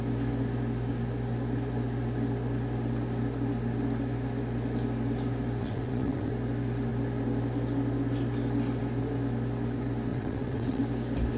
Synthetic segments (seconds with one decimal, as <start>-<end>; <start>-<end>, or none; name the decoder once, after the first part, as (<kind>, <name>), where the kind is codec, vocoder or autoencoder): 5.6-6.3 (vocoder, WaveNeXt); 10.1-10.8